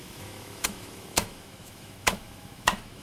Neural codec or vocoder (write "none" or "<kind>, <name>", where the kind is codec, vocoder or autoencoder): autoencoder, DAC-VAE